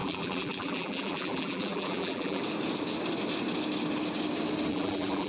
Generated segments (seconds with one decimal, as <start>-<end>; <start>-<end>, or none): 0.0-2.4; 4.7-5.3